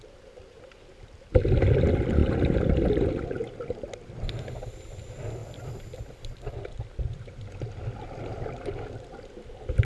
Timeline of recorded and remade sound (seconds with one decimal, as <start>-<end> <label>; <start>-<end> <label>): 0.0-9.8 recorded